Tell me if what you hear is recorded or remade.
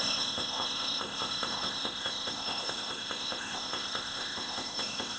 remade